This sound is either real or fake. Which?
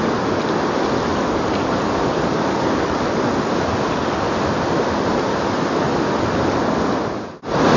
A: real